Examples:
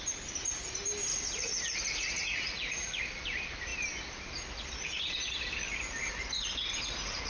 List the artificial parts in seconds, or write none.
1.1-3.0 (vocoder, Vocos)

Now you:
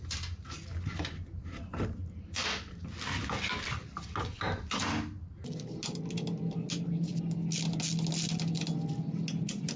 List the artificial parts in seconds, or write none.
none

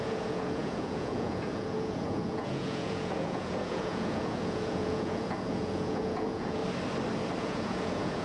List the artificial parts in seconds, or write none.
0.0-6.6 (vocoder, Vocos); 7.4-8.2

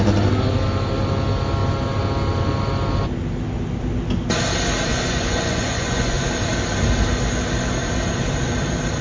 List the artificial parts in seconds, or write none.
4.9-6.3 (vocoder, Vocos)

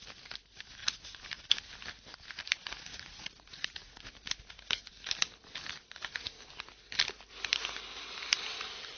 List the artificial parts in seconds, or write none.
0.8-1.4 (vocoder, Vocos); 2.9-4.3

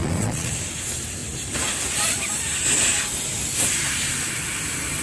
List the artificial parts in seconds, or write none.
0.0-0.5 (vocoder, Vocos)

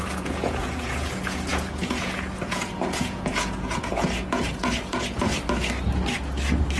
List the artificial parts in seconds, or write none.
0.0-5.3 (vocoder, Vocos)